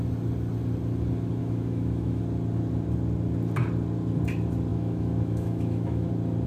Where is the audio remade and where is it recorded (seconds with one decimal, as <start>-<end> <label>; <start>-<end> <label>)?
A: 0.0-1.4 recorded; 1.4-2.2 remade; 2.2-4.7 recorded; 4.7-6.1 remade; 6.1-6.5 recorded